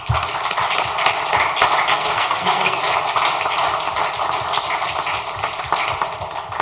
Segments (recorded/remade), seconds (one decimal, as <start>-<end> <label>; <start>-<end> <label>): 0.0-1.9 recorded; 1.9-2.8 remade; 2.8-6.6 recorded